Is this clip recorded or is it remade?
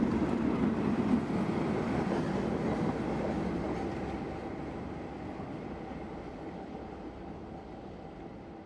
recorded